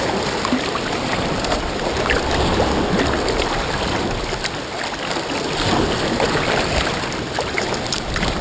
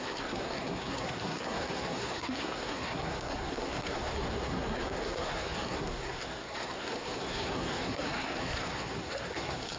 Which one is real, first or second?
first